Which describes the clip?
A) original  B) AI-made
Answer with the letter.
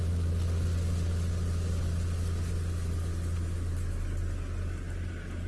A